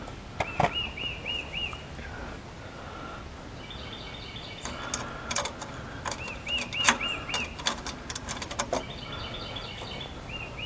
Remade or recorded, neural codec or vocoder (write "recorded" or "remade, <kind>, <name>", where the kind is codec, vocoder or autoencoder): recorded